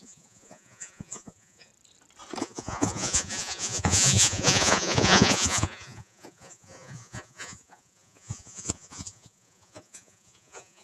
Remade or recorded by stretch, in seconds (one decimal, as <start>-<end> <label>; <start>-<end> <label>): 0.0-1.7 remade; 1.7-2.4 recorded; 2.4-10.8 remade